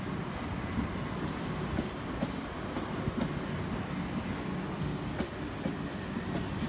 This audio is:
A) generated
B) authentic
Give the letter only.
B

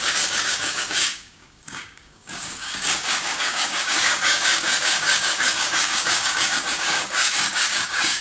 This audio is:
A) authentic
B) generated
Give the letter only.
B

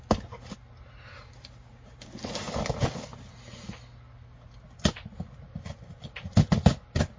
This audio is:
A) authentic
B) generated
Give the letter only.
A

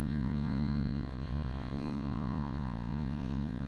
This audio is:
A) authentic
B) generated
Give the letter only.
B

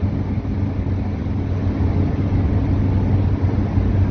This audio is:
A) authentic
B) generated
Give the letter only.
A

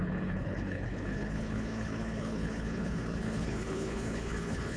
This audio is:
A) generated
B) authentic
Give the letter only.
A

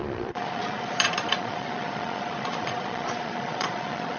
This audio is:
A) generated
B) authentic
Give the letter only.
A